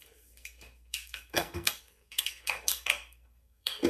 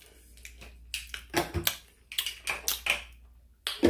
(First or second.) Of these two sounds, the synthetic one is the first